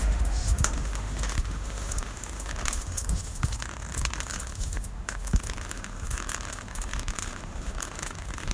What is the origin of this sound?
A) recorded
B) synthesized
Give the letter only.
B